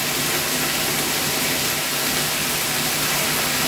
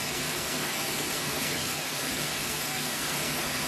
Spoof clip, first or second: second